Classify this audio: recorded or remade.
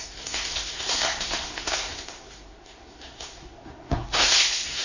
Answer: remade